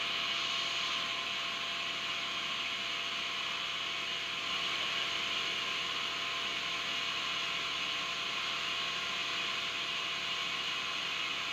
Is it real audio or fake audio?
real